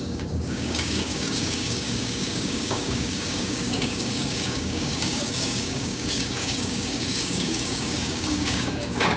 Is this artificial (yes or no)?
yes